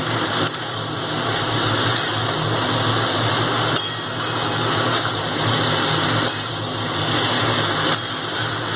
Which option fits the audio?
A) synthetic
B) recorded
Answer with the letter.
B